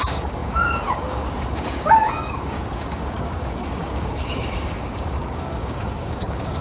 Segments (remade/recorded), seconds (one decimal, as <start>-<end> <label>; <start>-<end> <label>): 0.0-6.6 remade